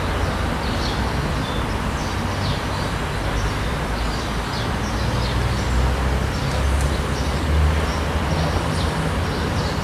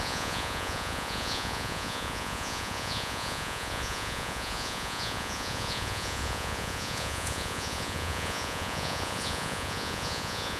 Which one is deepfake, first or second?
second